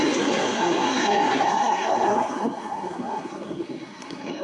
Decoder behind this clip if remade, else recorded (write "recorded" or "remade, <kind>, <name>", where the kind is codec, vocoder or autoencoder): remade, codec, SNAC